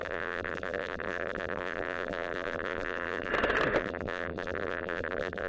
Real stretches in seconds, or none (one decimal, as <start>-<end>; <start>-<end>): 3.3-3.8